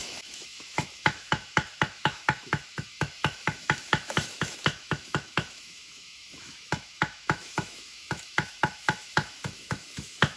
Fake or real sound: fake